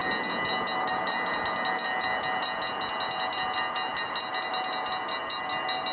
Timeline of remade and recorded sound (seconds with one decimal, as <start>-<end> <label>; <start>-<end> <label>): 0.0-5.9 recorded